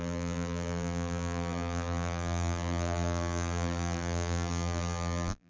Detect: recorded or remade remade